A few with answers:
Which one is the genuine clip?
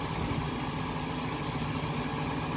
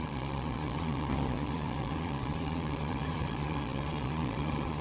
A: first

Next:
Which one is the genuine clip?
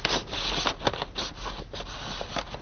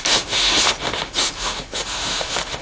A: first